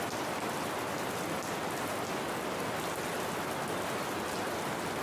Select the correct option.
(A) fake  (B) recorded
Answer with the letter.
B